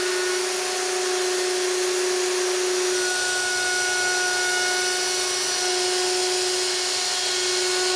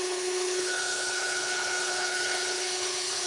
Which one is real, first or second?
first